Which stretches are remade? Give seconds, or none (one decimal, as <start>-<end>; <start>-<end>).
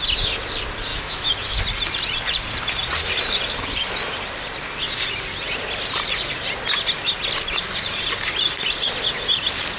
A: 0.9-1.6